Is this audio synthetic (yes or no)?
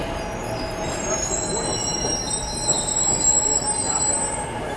no